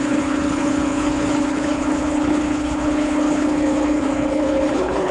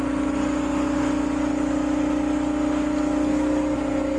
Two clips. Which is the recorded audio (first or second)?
second